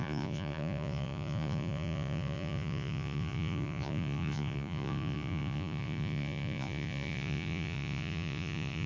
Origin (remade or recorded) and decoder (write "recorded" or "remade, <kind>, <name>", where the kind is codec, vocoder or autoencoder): remade, vocoder, Vocos